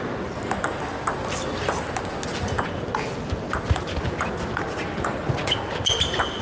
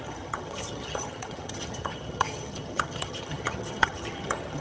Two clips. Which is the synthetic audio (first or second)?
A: second